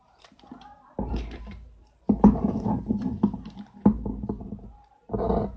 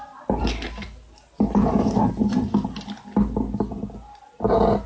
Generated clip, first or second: first